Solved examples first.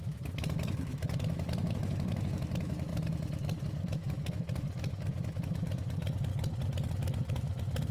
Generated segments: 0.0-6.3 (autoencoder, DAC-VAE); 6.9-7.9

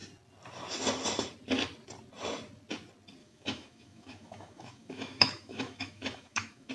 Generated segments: 3.2-6.7 (autoencoder, DAC-VAE)

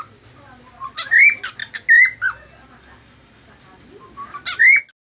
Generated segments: none

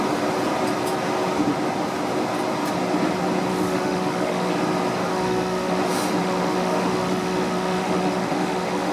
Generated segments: 3.5-4.5 (autoencoder, DAC-VAE); 5.1-5.8; 6.2-8.9